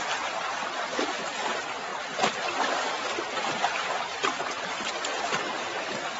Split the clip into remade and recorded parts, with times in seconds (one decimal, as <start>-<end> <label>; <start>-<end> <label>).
0.0-1.9 recorded; 1.9-5.6 remade; 5.6-6.2 recorded